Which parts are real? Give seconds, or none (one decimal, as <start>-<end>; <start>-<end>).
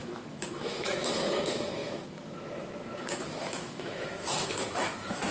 none